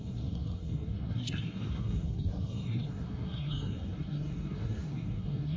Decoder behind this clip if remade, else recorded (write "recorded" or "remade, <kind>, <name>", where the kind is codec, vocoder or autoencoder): remade, codec, SNAC